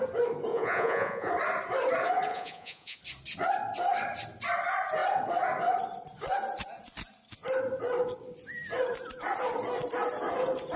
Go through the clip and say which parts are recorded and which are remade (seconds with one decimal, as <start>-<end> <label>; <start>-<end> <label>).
0.0-0.5 recorded; 0.5-1.3 remade; 1.3-2.3 recorded; 2.3-3.0 remade; 3.0-10.8 recorded